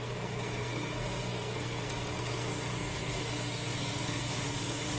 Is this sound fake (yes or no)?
yes